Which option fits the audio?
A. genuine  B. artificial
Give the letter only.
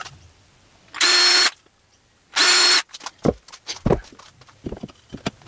A